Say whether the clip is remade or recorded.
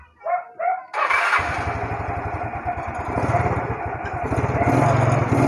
recorded